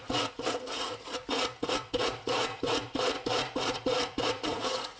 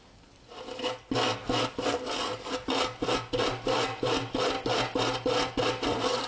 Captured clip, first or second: second